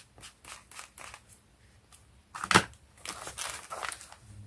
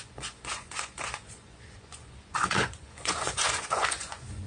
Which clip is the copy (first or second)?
second